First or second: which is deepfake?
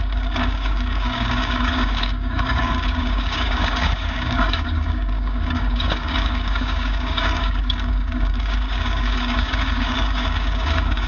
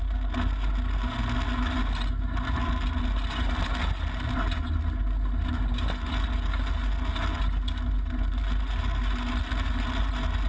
first